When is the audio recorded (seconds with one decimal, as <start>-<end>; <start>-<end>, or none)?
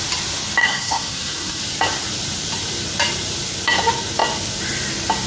0.0-0.6; 1.6-5.3